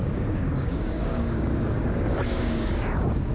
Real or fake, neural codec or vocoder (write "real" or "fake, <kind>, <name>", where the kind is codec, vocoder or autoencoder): fake, codec, DAC